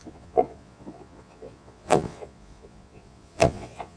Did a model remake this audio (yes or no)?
yes